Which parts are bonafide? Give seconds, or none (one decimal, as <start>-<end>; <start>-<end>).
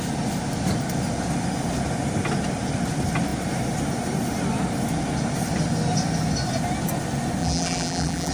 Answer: 0.0-7.4